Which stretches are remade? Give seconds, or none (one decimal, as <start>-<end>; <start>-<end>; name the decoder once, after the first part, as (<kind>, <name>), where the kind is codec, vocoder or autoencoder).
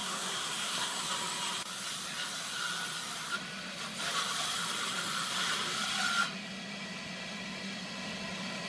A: 0.0-1.0 (codec, SNAC)